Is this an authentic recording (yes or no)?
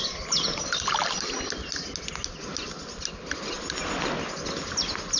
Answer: yes